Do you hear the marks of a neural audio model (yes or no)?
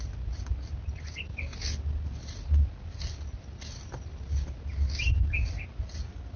no